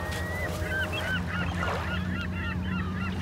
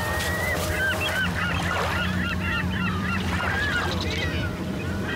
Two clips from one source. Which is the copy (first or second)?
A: second